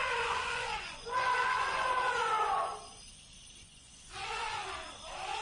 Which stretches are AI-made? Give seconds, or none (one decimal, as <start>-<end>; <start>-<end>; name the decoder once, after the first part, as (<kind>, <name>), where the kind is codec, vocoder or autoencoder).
0.0-2.7 (vocoder, Vocos); 3.6-4.6